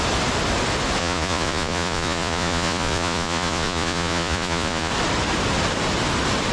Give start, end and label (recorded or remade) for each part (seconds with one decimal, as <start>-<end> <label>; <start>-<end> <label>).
0.0-1.0 recorded; 1.0-4.9 remade; 4.9-6.5 recorded